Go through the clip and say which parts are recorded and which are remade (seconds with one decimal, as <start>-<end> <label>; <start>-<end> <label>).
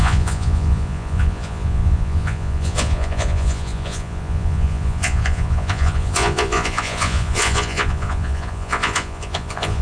0.0-9.8 remade